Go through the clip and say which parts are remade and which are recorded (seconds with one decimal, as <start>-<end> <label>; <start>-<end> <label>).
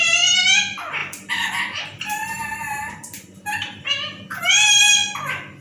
0.0-1.0 recorded; 1.0-4.4 remade; 4.4-5.6 recorded